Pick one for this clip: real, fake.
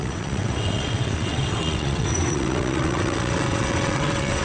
fake